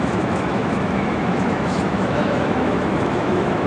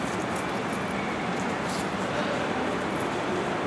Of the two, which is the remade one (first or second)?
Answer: first